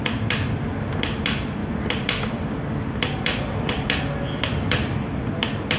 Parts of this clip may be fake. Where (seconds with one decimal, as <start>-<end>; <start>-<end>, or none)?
none